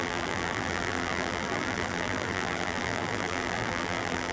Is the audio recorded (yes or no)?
no